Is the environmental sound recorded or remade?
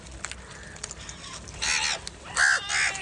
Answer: recorded